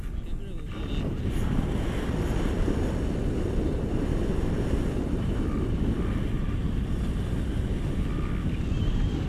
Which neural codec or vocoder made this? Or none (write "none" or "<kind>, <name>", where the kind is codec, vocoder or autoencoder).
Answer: none